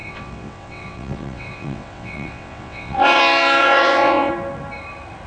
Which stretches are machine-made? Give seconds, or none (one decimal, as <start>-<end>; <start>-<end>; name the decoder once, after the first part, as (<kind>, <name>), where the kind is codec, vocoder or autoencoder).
0.0-3.2 (vocoder, WaveNeXt); 3.6-4.3